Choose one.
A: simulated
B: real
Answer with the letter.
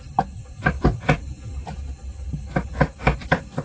B